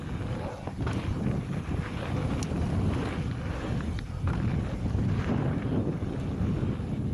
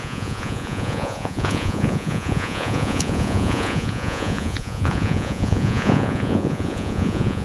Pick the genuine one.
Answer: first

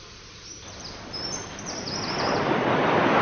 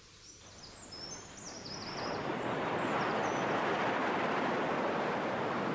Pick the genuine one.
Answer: second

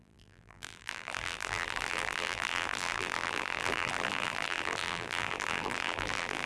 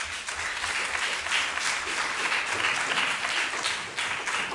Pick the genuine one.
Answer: second